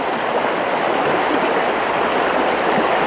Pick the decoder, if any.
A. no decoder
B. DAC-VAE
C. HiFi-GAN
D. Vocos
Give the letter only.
A